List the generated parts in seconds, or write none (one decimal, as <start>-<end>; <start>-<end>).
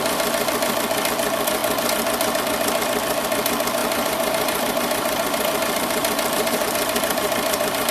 3.8-7.9